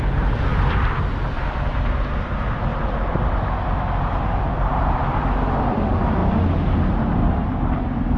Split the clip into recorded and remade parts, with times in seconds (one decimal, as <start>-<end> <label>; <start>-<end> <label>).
0.0-2.7 remade; 2.7-4.4 recorded; 4.4-6.2 remade; 6.2-6.7 recorded; 6.7-8.2 remade